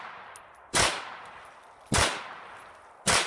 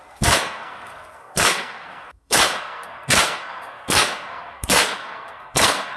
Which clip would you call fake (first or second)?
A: second